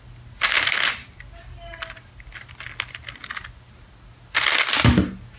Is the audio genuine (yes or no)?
yes